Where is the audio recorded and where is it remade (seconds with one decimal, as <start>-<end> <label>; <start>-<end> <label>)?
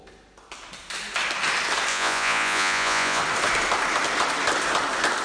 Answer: 0.0-1.9 recorded; 1.9-3.2 remade; 3.2-5.2 recorded